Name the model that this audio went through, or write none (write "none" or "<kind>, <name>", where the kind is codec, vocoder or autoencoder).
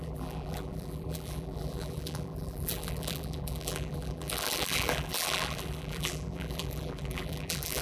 vocoder, BigVGAN v2